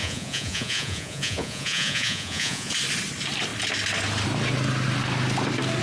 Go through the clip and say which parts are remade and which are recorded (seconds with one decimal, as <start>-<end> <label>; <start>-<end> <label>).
0.0-2.7 remade; 2.7-5.8 recorded